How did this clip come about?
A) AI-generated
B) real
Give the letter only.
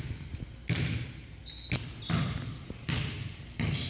B